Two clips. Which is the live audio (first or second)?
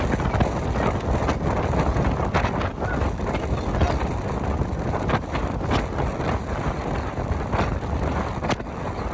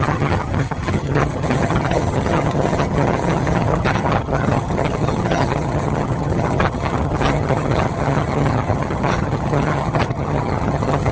first